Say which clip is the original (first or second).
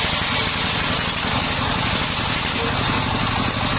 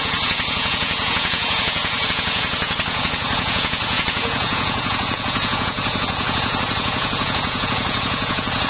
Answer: first